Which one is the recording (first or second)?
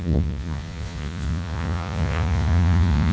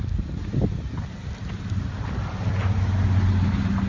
second